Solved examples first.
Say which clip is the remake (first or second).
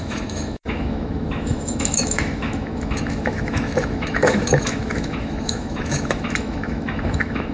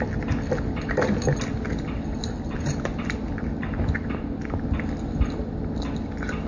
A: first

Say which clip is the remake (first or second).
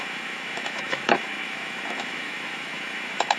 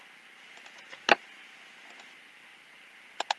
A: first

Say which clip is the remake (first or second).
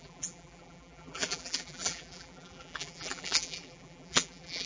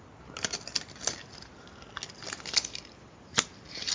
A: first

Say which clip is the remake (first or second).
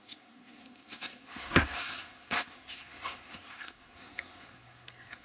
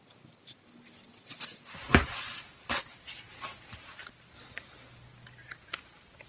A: first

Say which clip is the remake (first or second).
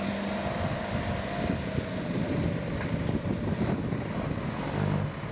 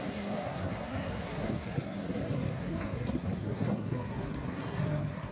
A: second